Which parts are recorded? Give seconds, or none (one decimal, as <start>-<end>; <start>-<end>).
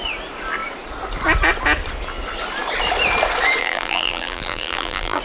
0.0-3.6